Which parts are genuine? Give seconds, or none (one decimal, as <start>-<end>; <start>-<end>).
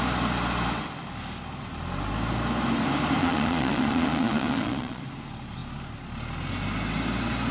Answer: 0.0-3.2; 5.0-7.5